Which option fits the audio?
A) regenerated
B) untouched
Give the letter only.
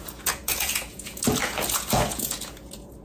A